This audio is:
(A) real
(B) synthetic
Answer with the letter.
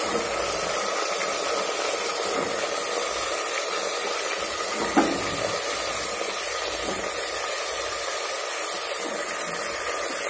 A